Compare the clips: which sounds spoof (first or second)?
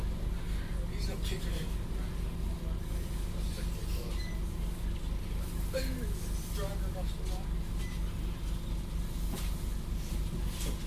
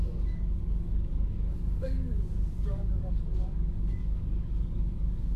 second